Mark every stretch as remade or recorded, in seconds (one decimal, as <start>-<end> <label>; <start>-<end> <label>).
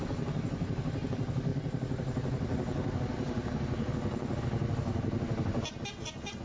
0.0-6.4 recorded